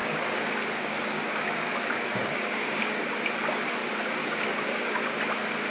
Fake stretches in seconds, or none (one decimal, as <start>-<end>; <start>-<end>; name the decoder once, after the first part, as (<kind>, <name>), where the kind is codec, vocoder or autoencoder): 0.0-3.1 (codec, DAC); 4.2-5.2